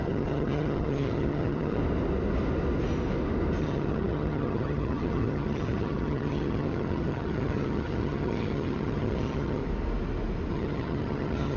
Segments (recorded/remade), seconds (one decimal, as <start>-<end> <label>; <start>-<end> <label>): 0.0-1.8 remade; 1.8-3.6 recorded; 3.6-9.6 remade; 9.6-10.5 recorded; 10.5-11.6 remade